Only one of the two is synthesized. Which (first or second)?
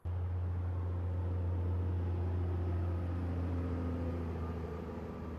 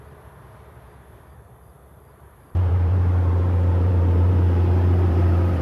second